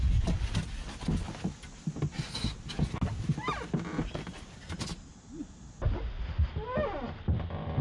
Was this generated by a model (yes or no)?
no